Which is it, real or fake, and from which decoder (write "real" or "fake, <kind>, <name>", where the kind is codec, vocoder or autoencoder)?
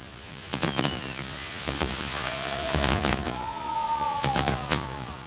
fake, vocoder, Vocos